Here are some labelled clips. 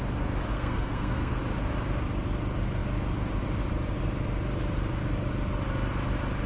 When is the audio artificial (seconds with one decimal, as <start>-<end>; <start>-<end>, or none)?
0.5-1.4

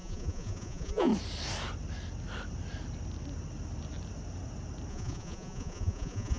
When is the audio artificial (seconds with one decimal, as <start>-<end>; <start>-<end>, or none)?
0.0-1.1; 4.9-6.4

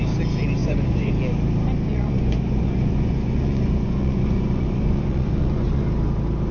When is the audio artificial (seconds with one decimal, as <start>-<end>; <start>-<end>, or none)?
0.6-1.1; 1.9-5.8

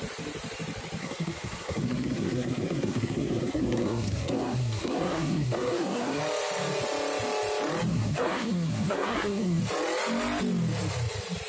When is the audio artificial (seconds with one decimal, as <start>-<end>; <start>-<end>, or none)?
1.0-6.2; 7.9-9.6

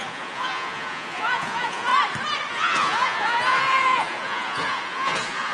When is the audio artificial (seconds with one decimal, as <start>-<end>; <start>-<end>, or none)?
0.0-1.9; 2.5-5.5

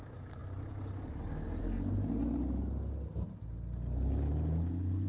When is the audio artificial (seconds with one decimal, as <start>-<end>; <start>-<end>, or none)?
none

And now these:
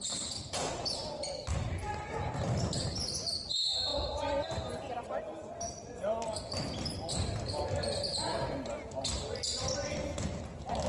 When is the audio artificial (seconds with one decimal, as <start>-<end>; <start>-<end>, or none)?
none

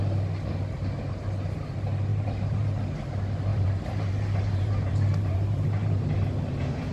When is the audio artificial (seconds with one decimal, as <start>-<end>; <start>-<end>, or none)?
2.1-2.8; 3.5-6.1